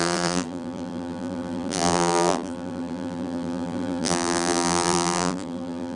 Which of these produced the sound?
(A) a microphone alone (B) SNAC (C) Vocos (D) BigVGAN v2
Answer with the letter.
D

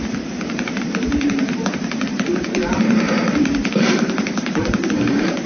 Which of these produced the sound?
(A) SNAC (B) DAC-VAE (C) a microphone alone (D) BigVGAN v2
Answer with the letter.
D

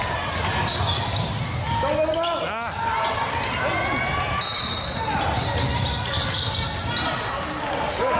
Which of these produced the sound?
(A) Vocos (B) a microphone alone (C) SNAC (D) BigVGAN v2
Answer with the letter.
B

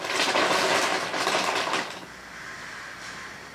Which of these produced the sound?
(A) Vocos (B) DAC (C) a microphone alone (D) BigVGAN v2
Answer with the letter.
D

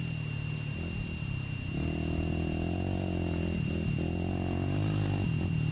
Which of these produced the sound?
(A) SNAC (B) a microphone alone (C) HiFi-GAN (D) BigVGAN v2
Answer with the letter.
B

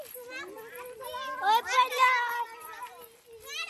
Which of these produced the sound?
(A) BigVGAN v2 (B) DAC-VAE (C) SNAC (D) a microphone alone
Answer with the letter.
D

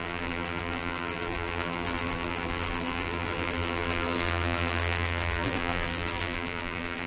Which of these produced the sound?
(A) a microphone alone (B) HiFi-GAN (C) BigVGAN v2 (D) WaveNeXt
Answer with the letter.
C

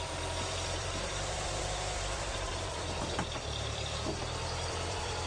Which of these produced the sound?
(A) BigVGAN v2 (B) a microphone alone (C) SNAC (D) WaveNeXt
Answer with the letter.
A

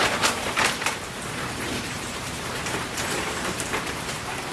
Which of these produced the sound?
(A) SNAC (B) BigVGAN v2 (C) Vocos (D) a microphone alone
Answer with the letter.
B